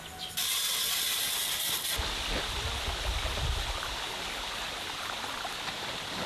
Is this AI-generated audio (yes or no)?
no